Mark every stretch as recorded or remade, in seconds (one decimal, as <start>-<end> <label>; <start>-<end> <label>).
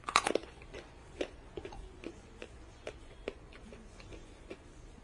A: 0.0-5.0 remade